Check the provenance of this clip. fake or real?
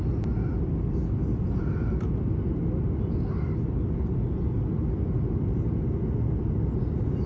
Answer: real